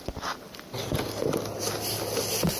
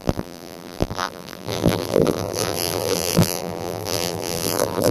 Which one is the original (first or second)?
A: first